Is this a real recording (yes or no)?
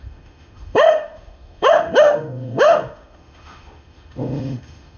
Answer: no